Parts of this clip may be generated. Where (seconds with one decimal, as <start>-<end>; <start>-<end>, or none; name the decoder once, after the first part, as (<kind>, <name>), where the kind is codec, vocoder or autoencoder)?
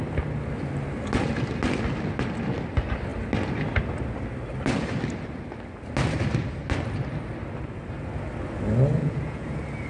9.0-9.5 (vocoder, Vocos)